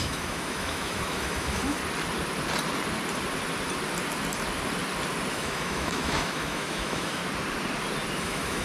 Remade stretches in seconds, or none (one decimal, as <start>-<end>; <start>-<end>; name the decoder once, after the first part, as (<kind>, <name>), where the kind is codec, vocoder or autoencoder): 0.0-1.8 (autoencoder, DAC-VAE); 5.3-7.2; 8.2-8.6